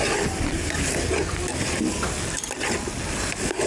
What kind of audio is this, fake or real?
real